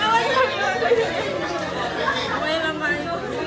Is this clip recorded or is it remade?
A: recorded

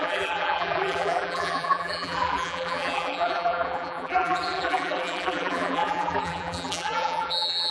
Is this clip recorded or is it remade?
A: remade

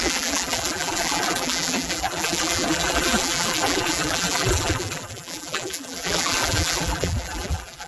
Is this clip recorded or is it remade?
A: remade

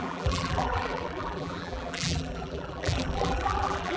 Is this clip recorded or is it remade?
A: remade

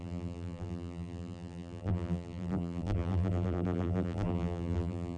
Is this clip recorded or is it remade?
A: remade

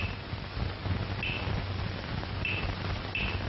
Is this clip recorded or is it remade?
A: recorded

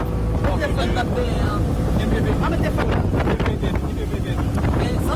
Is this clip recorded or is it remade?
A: remade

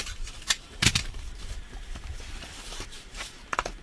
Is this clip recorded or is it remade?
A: remade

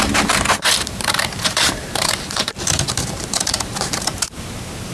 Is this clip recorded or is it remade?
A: remade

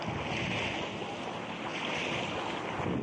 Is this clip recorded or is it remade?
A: recorded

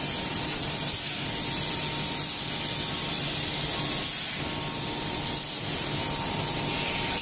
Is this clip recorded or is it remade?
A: recorded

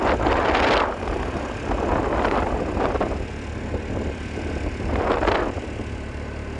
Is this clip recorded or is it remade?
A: remade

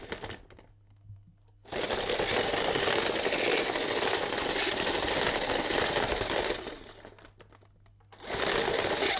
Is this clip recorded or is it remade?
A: recorded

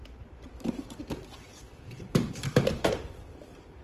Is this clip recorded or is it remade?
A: remade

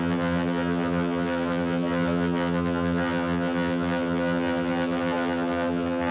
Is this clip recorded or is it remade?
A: remade